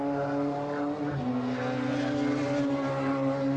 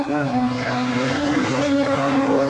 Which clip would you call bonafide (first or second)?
first